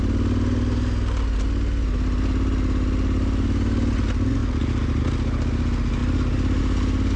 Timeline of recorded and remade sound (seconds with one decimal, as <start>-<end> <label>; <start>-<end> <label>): 0.0-7.2 recorded